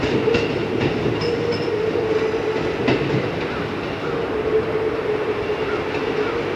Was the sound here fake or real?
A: real